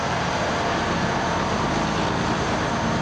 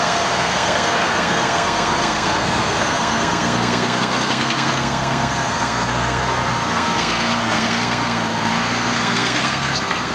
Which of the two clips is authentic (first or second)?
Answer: first